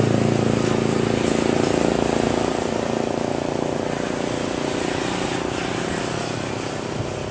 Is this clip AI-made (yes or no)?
no